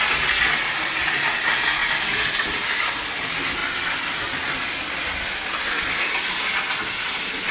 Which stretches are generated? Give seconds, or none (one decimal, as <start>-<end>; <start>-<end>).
none